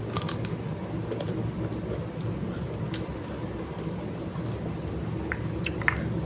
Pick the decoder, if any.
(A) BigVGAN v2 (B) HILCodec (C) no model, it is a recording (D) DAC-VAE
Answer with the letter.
C